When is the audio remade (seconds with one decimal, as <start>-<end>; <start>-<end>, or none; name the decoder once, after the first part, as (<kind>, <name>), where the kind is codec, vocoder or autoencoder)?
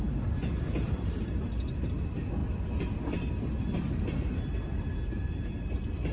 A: none